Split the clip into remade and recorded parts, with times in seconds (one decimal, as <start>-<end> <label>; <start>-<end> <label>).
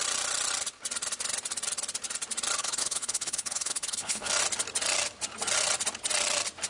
0.0-2.6 recorded; 2.6-4.3 remade; 4.3-6.7 recorded